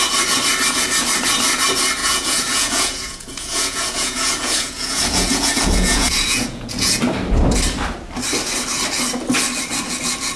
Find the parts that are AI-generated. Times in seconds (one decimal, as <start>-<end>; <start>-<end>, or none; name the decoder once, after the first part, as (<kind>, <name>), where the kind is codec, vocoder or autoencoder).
2.0-7.0 (vocoder, Vocos)